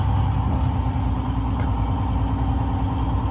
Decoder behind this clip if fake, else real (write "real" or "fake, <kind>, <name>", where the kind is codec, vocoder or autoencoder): real